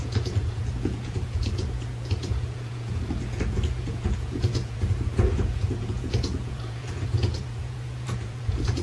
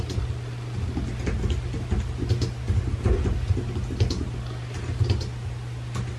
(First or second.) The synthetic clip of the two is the first